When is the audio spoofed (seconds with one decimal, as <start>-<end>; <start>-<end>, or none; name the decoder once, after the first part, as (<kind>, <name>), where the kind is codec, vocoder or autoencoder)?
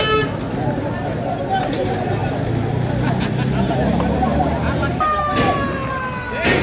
none